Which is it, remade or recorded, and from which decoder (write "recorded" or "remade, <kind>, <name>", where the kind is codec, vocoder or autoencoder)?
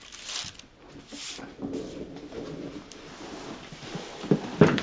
recorded